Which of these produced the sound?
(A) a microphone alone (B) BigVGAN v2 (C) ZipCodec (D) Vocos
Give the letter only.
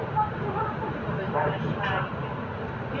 A